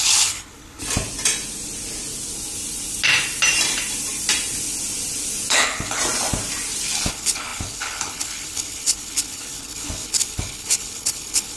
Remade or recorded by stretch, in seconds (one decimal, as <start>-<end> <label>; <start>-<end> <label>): 0.0-0.8 remade; 0.8-5.5 recorded; 5.5-6.0 remade; 6.0-7.1 recorded; 7.1-11.6 remade